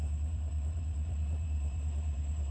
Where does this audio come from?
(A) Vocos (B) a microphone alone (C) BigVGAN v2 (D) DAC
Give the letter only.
C